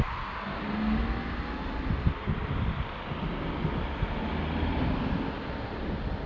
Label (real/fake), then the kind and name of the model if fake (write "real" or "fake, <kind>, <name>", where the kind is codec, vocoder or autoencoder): real